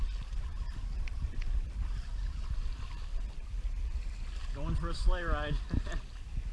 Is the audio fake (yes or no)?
no